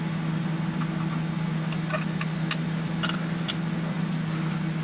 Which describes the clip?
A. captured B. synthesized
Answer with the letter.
A